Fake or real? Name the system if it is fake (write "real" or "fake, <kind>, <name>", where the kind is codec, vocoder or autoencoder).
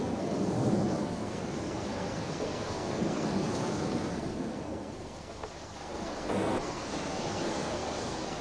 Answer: fake, codec, SNAC